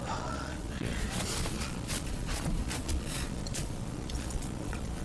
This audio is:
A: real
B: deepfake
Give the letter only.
B